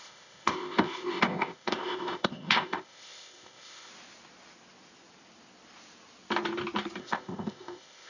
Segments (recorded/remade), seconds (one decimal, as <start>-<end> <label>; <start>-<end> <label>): 0.0-3.9 remade; 3.9-7.0 recorded; 7.0-8.1 remade